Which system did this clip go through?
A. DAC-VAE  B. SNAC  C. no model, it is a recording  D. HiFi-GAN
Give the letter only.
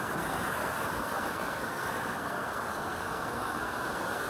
B